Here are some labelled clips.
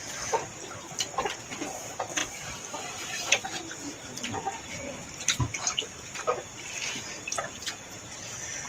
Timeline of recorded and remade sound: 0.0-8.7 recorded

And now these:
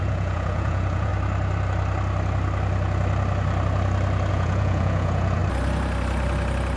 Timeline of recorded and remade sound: 0.0-1.1 remade; 1.1-4.3 recorded; 4.3-5.4 remade; 5.4-6.8 recorded

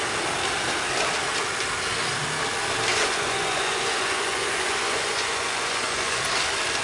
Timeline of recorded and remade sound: 0.0-2.9 recorded; 2.9-6.2 remade; 6.2-6.8 recorded

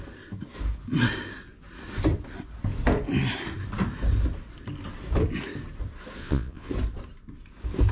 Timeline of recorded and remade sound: 0.0-6.2 recorded; 6.2-6.7 remade; 6.7-7.9 recorded

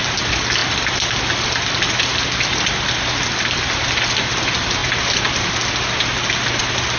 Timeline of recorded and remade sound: 0.0-7.0 recorded

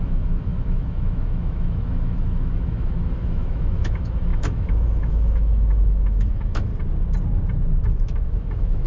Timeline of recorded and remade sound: 0.0-6.7 remade; 6.7-8.0 recorded; 8.0-8.9 remade

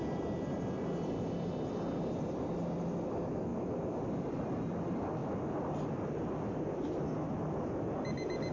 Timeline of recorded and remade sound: 0.0-8.5 recorded